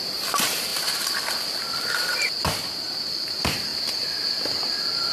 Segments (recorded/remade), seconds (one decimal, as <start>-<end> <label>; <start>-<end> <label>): 0.0-0.7 recorded; 0.7-2.4 remade; 2.4-5.1 recorded